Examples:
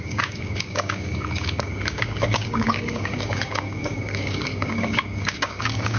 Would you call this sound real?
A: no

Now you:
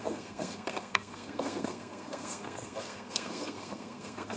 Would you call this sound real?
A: no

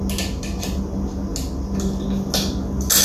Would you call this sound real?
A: yes